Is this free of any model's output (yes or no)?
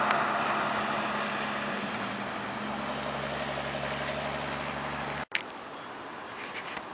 yes